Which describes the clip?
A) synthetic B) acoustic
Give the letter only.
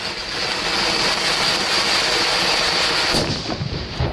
B